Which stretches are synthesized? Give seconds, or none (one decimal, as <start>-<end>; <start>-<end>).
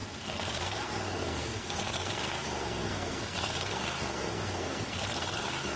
0.0-5.8